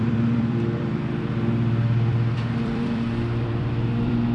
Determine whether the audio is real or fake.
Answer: fake